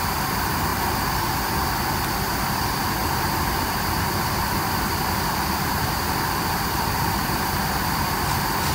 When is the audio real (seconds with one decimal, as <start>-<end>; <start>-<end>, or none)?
0.0-0.7; 1.3-3.0; 7.6-8.7